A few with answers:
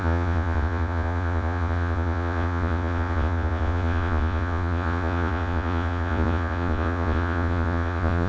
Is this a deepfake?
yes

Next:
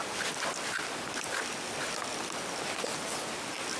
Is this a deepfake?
no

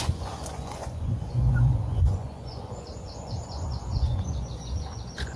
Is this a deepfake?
yes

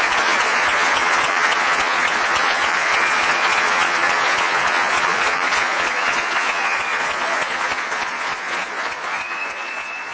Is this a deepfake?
yes